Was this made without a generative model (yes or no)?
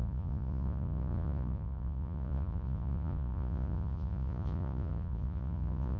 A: no